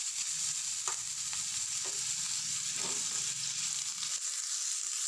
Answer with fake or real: real